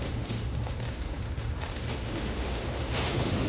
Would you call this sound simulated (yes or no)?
yes